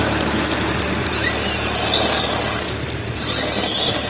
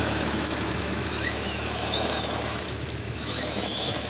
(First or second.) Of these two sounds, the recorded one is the first